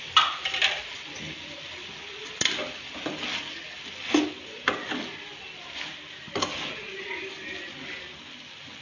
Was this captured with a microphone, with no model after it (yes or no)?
yes